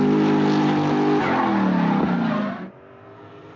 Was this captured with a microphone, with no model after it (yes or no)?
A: yes